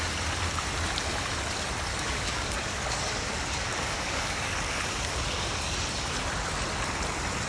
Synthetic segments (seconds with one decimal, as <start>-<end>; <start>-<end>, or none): 1.9-6.1